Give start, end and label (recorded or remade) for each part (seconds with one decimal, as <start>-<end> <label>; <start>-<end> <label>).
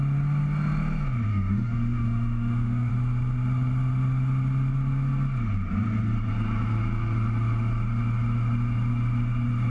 0.0-1.3 recorded; 1.3-2.9 remade; 2.9-9.7 recorded